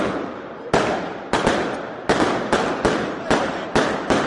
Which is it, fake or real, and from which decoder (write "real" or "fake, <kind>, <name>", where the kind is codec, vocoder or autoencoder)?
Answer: real